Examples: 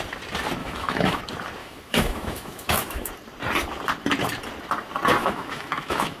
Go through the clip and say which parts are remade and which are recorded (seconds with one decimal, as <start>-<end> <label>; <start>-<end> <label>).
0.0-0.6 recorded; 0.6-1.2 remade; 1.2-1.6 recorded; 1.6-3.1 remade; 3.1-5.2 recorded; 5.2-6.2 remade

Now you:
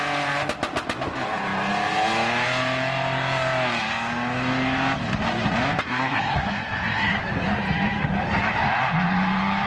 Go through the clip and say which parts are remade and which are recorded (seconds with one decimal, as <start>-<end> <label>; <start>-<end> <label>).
0.0-5.8 recorded; 5.8-7.1 remade; 7.1-9.7 recorded

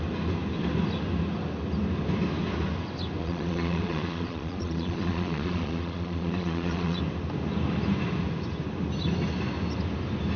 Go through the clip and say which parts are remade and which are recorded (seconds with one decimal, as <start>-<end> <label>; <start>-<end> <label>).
0.0-3.2 recorded; 3.2-7.0 remade; 7.0-10.4 recorded

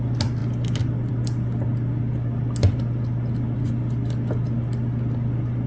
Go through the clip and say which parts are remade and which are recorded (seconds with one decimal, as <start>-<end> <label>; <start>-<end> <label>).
0.0-5.7 recorded

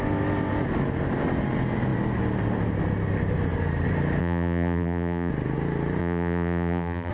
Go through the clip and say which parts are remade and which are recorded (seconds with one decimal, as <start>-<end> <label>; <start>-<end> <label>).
0.0-4.2 recorded; 4.2-5.3 remade; 5.3-6.0 recorded; 6.0-7.1 remade